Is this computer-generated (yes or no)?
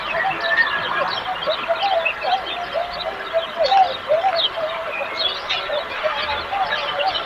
no